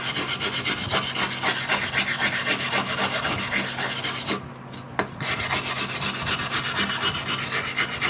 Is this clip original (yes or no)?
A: yes